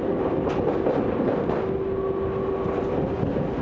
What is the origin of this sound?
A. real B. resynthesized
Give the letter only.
A